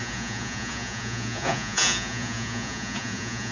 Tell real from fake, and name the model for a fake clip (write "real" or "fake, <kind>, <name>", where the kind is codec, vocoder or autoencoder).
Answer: fake, vocoder, Vocos